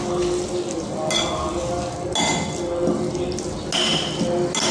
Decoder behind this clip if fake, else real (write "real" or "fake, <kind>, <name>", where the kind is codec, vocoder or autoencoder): real